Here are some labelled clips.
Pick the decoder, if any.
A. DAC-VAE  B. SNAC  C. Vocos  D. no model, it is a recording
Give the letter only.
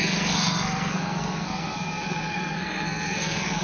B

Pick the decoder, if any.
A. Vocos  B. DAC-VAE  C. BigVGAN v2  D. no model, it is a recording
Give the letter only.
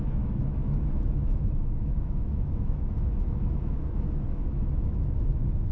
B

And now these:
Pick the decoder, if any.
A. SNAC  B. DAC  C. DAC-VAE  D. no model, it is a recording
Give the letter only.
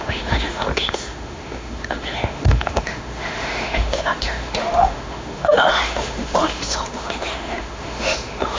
C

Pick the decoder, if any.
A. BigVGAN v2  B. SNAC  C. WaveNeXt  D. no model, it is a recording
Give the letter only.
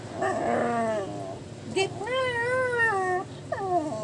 D